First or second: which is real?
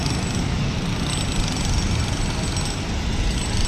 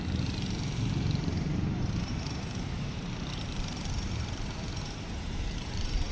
first